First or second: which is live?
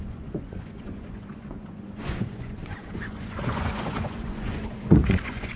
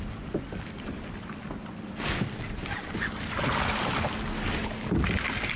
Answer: second